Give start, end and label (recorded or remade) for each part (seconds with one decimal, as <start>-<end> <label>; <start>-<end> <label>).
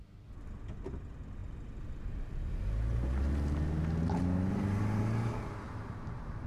0.0-6.5 recorded